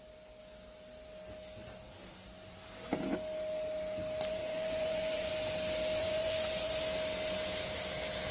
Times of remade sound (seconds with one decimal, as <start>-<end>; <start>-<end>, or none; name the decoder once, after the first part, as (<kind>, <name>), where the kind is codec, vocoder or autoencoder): 4.3-5.3 (vocoder, Vocos); 6.0-6.8